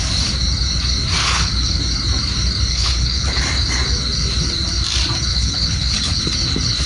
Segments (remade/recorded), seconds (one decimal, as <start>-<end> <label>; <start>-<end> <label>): 0.0-1.2 recorded; 1.2-1.8 remade; 1.8-2.7 recorded; 2.7-3.4 remade; 3.4-5.3 recorded; 5.3-6.2 remade; 6.2-6.9 recorded